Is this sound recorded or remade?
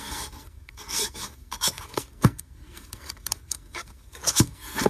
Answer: remade